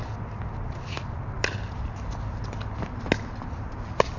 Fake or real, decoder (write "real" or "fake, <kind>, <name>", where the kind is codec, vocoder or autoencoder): real